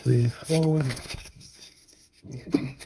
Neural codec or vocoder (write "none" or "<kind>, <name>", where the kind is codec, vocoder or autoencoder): codec, SNAC